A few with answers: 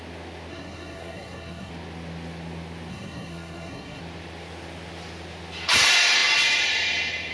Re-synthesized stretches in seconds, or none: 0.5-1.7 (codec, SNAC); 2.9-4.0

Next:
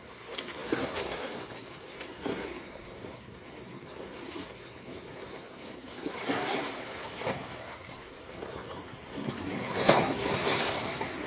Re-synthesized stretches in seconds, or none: 0.0-11.3 (codec, SNAC)

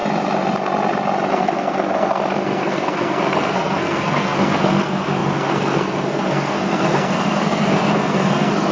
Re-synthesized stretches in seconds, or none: 1.3-8.7 (codec, SNAC)

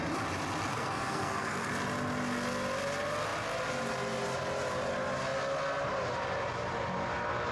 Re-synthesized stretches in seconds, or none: 0.7-1.7 (codec, SNAC)

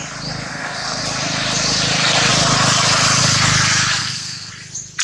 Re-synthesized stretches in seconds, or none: 0.5-1.0 (codec, SNAC); 4.0-4.5

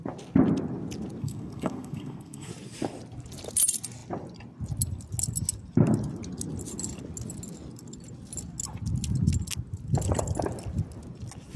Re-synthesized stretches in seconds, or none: 1.2-2.5 (codec, SNAC)

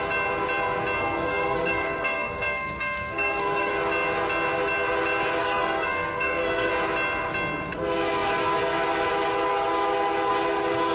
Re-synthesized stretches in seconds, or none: 1.0-3.7 (codec, SNAC); 5.4-6.7

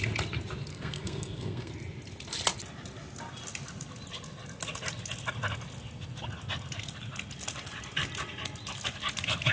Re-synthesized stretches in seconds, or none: 0.7-1.7 (codec, SNAC)